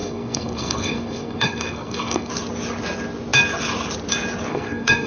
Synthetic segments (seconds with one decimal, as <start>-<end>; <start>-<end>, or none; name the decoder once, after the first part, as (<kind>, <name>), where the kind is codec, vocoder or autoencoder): 0.0-2.3 (codec, SNAC); 4.5-5.1